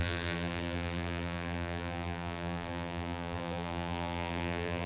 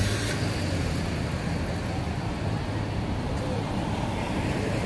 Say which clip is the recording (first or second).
second